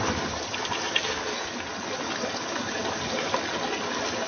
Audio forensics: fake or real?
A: real